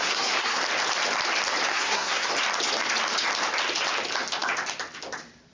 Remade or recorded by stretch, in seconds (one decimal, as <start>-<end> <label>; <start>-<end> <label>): 0.0-0.6 remade; 0.6-1.7 recorded; 1.7-2.3 remade; 2.3-5.5 recorded